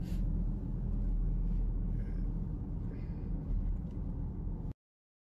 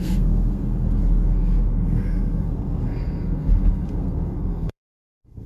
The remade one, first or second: second